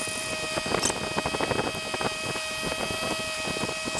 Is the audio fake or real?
real